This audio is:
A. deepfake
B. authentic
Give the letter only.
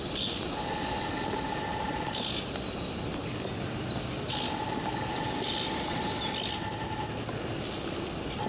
B